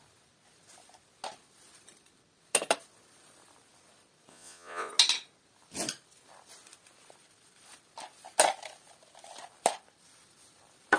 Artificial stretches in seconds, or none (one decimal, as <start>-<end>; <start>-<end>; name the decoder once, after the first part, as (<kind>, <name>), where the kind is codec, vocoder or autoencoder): 4.3-4.9 (vocoder, Vocos)